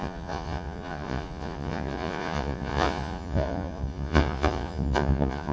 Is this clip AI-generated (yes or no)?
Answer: yes